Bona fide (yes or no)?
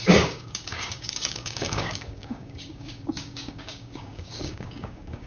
no